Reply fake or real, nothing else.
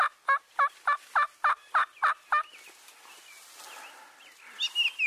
real